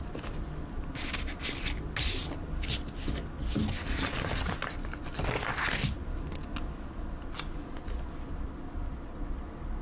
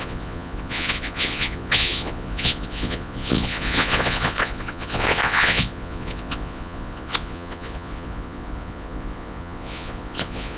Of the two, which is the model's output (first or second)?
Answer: second